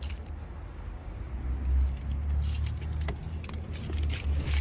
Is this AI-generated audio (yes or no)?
no